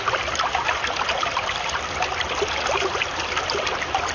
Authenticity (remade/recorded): recorded